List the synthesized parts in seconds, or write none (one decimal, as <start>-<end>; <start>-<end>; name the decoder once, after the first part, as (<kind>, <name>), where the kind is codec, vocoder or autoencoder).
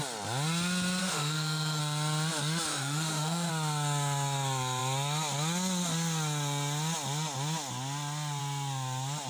1.0-1.8 (autoencoder, DAC-VAE); 2.7-3.5